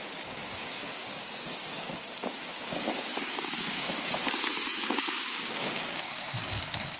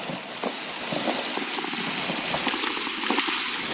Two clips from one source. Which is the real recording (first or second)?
second